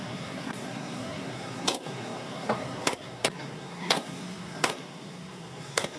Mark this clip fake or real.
fake